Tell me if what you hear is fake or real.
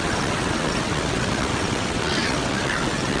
fake